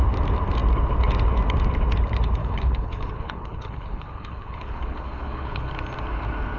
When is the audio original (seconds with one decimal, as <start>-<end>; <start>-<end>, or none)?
0.0-2.4; 5.7-6.6

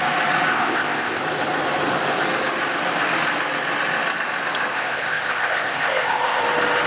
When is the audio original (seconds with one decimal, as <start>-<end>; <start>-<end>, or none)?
0.0-0.5; 1.2-4.7; 6.4-6.9

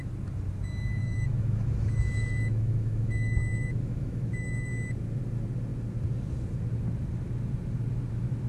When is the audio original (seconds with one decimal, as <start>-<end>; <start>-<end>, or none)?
0.0-1.0; 4.7-8.5

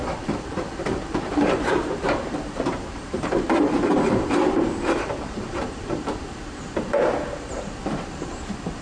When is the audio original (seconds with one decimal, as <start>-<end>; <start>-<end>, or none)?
none

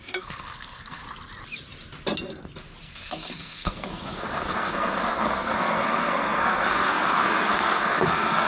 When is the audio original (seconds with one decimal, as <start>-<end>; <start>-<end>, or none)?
1.0-2.8

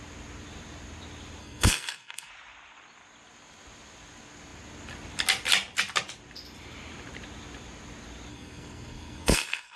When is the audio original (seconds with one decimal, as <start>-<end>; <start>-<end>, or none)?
0.0-1.4; 2.3-8.3